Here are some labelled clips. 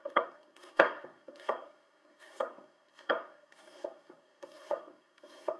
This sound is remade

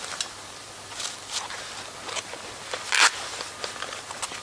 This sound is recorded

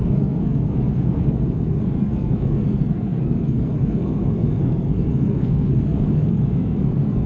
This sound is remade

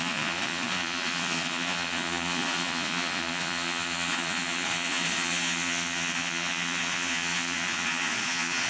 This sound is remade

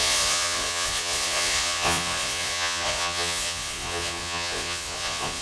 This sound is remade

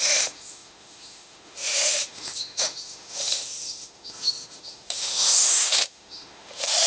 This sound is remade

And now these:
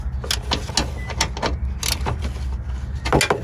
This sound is recorded